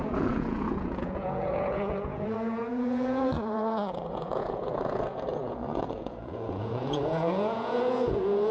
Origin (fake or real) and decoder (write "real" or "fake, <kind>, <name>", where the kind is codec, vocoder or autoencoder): fake, vocoder, Vocos